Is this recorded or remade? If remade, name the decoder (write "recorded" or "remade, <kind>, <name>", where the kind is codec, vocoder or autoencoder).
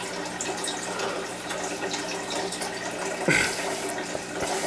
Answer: recorded